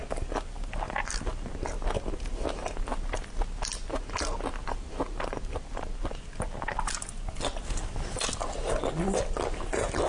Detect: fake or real real